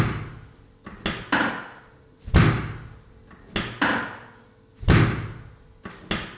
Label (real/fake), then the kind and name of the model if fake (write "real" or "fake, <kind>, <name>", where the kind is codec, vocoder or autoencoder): real